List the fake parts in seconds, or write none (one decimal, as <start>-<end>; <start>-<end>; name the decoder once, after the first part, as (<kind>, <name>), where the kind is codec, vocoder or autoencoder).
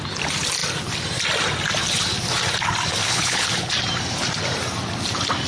3.0-3.7 (codec, HILCodec)